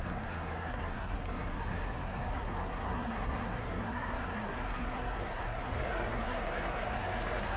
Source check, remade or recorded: remade